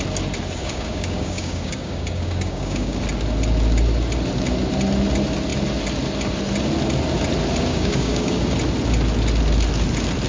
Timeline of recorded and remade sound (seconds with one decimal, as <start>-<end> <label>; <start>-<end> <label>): 0.0-0.6 recorded; 0.6-3.0 remade; 3.0-7.7 recorded; 7.7-8.4 remade; 8.4-10.3 recorded

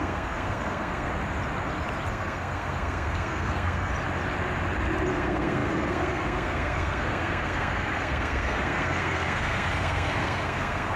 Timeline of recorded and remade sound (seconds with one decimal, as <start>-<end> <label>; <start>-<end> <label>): 0.0-1.1 remade; 1.1-2.1 recorded; 2.1-3.9 remade; 3.9-5.1 recorded; 5.1-11.0 remade

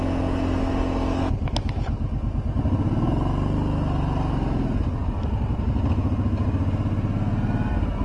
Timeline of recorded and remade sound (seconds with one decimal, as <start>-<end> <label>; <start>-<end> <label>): 0.0-5.0 recorded; 5.0-5.9 remade; 5.9-8.0 recorded

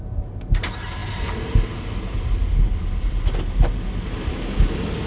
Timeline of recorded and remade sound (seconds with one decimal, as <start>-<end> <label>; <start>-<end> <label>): 0.0-5.1 recorded

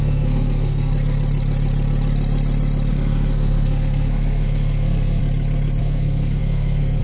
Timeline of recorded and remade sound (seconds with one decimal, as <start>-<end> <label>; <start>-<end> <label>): 0.0-0.9 remade; 0.9-2.9 recorded; 2.9-5.2 remade; 5.2-5.8 recorded; 5.8-7.0 remade